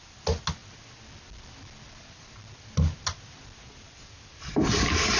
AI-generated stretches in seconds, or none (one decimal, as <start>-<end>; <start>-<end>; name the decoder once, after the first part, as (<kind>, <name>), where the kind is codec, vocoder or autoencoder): none